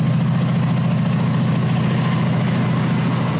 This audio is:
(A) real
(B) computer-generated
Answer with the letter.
A